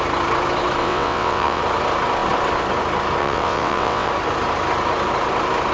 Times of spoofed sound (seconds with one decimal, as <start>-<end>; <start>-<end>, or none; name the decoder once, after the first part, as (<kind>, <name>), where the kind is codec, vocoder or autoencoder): 0.8-1.6 (vocoder, WaveNeXt); 3.2-4.1